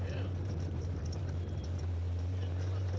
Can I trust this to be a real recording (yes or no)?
no